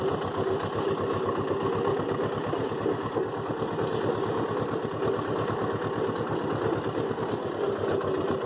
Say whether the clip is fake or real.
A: real